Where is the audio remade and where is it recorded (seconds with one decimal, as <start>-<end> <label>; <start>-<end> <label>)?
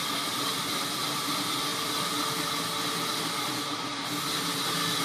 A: 0.0-5.0 recorded